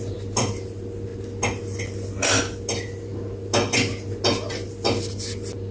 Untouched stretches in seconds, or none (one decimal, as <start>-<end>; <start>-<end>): 0.0-5.7